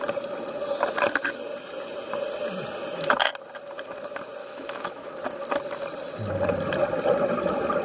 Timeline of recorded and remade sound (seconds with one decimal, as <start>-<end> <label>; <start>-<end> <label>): 0.0-4.4 recorded; 4.4-5.1 remade; 5.1-7.8 recorded